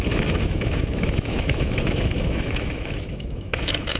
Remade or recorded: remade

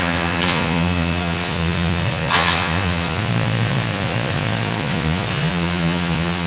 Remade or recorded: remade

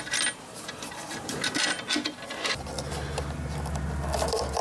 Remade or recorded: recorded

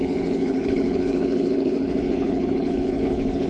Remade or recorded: remade